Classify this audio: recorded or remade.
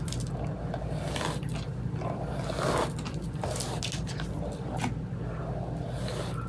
recorded